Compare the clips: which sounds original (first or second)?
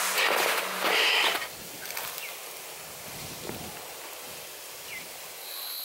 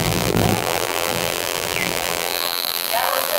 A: first